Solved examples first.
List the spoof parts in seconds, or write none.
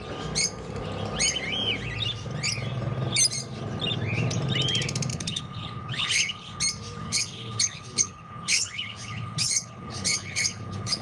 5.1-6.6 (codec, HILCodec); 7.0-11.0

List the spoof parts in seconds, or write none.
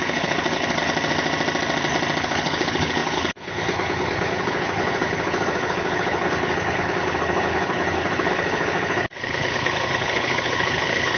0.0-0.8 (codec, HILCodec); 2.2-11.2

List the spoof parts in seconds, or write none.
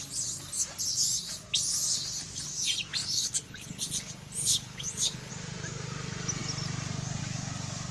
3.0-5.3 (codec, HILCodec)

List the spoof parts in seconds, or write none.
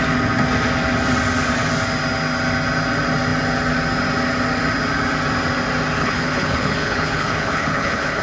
6.0-8.2 (codec, HILCodec)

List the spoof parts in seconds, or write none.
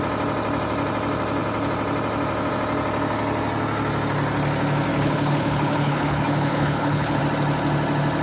4.9-7.2 (codec, HILCodec)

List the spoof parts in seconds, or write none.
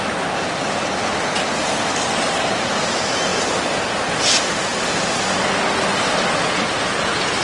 none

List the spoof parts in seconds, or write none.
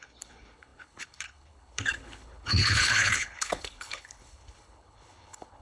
0.0-5.6 (codec, HILCodec)